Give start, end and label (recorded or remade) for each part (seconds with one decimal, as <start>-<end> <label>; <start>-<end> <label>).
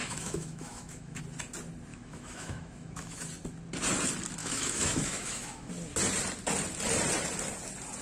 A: 0.0-1.2 remade; 1.2-1.9 recorded; 1.9-3.2 remade; 3.2-4.4 recorded; 4.4-5.7 remade; 5.7-8.0 recorded